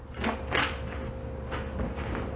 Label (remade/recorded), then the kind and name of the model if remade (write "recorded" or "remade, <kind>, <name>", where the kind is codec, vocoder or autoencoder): recorded